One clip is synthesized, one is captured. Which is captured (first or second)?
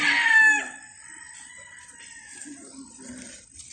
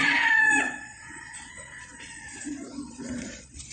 first